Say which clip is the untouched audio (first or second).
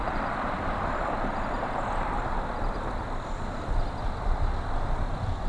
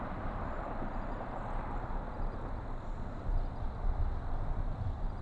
second